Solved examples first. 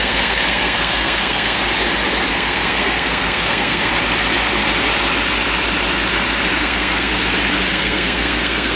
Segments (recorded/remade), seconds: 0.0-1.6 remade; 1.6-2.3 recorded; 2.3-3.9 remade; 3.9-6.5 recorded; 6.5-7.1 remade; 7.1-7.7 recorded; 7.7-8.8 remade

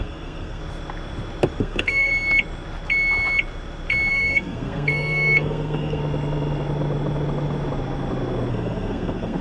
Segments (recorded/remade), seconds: 0.0-0.6 remade; 0.6-1.6 recorded; 1.6-2.1 remade; 2.1-4.1 recorded; 4.1-6.0 remade; 6.0-8.5 recorded; 8.5-9.4 remade

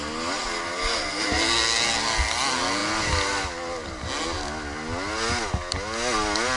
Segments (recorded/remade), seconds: 0.0-6.6 recorded

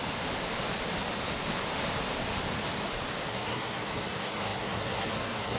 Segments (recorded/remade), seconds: 0.0-3.3 recorded; 3.3-5.6 remade

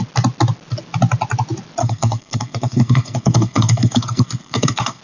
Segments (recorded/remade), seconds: 0.0-1.8 recorded; 1.8-5.0 remade